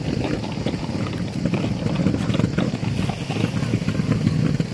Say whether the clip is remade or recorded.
recorded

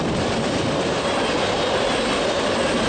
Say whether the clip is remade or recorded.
recorded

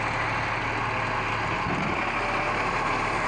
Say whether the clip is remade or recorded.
recorded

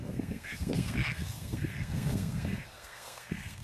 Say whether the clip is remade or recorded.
remade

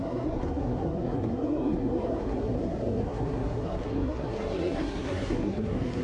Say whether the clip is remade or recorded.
remade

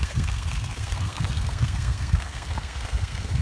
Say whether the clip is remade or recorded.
remade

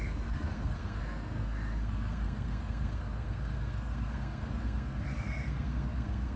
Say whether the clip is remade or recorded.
remade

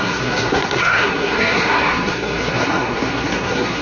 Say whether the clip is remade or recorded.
remade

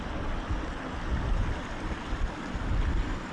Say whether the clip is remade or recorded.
recorded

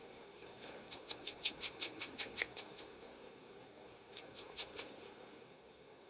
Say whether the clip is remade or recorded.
remade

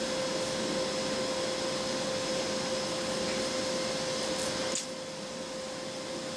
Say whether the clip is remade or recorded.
recorded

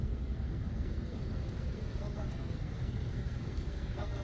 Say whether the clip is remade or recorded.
remade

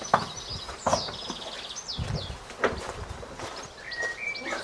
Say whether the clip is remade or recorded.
recorded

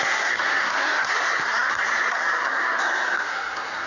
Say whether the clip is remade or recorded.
remade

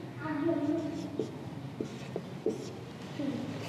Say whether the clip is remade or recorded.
recorded